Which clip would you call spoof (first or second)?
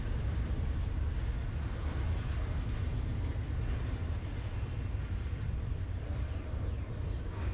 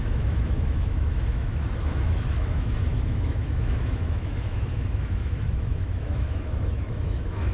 second